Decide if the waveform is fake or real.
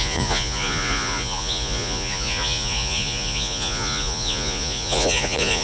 fake